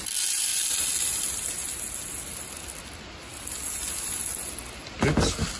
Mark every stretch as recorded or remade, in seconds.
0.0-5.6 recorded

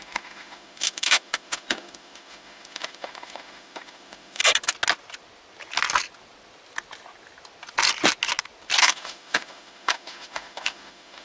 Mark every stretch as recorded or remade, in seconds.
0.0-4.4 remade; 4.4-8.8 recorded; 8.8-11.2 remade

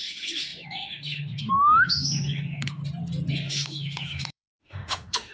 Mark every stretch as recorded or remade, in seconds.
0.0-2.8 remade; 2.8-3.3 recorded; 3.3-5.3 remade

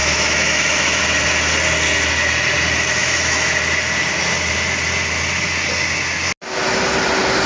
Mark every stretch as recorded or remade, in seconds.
0.0-1.0 remade; 1.0-3.0 recorded; 3.0-3.5 remade; 3.5-7.5 recorded

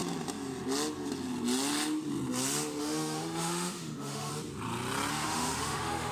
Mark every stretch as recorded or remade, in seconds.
0.0-2.8 recorded; 2.8-4.3 remade; 4.3-5.1 recorded; 5.1-6.1 remade

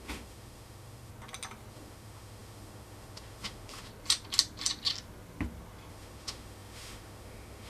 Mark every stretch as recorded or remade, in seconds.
0.0-1.1 remade; 1.1-1.7 recorded; 1.7-3.9 remade; 3.9-5.9 recorded; 5.9-7.7 remade